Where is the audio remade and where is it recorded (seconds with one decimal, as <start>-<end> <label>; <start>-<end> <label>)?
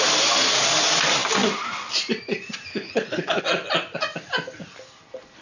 0.0-2.7 recorded; 2.7-3.4 remade; 3.4-5.4 recorded